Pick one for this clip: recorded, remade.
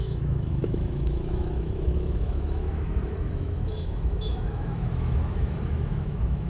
remade